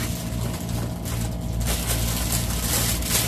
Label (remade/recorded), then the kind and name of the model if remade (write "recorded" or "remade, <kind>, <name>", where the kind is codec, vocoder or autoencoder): recorded